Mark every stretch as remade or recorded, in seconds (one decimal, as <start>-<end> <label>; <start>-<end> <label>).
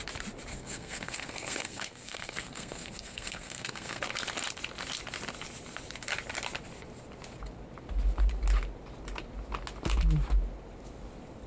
0.0-0.5 recorded; 0.5-4.0 remade; 4.0-11.5 recorded